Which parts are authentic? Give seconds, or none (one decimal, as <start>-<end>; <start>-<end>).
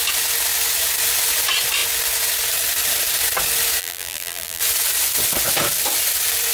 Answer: 0.0-3.8; 4.6-6.5